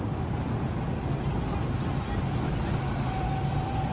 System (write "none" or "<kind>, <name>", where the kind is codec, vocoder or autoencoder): none